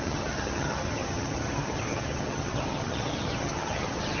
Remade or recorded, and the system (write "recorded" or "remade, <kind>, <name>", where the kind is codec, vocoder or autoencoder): remade, vocoder, HiFi-GAN